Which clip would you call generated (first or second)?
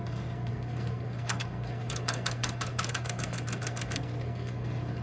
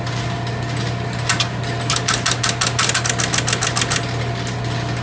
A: first